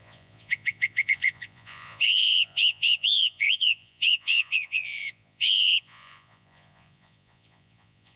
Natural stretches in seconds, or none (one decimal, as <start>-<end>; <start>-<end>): none